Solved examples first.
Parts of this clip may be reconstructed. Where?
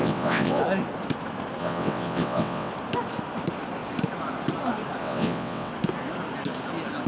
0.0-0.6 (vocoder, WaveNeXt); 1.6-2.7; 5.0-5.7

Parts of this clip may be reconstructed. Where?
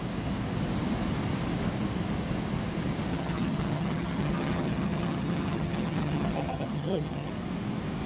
3.1-7.3 (vocoder, HiFi-GAN)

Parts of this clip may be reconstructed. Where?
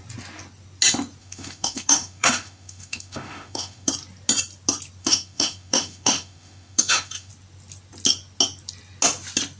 1.2-3.9 (autoencoder, DAC-VAE); 5.0-7.3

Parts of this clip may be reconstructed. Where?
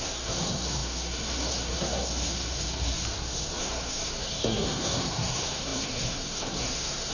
0.0-2.9 (codec, SNAC); 3.6-7.1